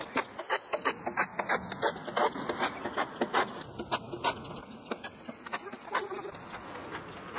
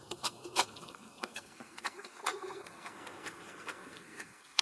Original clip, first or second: first